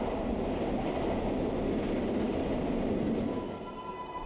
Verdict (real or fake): real